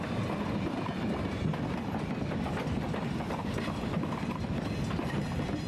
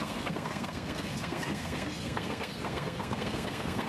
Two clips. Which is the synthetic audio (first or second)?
second